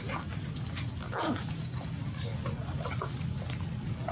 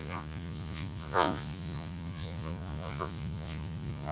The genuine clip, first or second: first